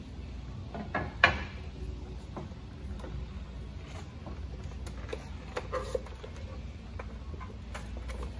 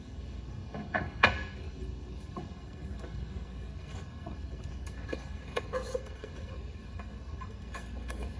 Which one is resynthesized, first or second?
second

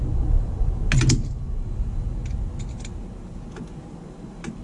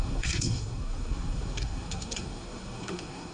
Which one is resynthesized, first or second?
second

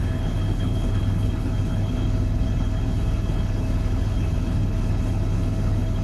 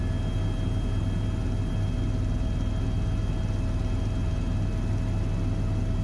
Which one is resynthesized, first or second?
first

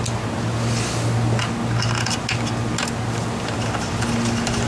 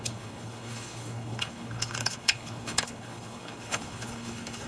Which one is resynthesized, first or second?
second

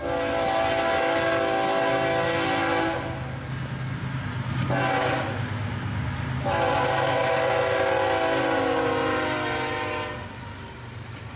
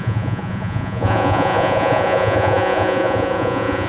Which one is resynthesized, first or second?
second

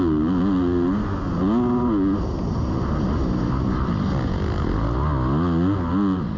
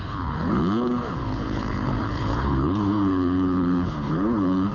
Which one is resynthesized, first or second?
second